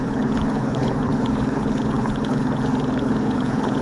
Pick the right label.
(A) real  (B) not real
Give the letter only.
B